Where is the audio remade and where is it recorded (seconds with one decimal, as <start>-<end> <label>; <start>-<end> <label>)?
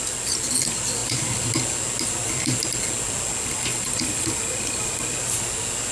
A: 0.0-5.9 recorded